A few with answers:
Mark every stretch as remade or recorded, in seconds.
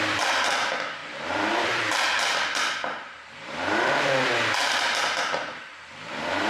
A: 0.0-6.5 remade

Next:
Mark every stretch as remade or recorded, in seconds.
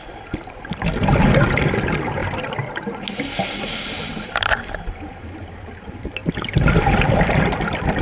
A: 0.0-0.7 remade; 0.7-2.2 recorded; 2.2-3.0 remade; 3.0-4.1 recorded; 4.1-5.2 remade; 5.2-8.0 recorded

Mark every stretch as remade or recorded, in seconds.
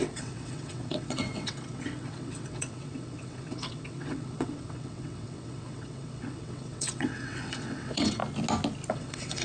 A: 0.0-8.2 remade; 8.2-8.9 recorded; 8.9-9.4 remade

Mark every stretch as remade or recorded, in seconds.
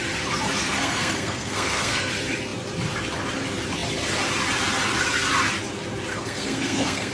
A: 0.0-0.6 recorded; 0.6-2.1 remade; 2.1-6.1 recorded; 6.1-7.1 remade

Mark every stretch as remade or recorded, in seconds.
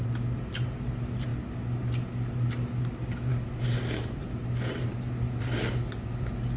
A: 0.0-6.6 recorded